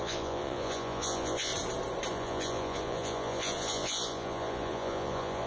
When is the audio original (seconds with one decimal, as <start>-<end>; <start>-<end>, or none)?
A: 1.5-2.1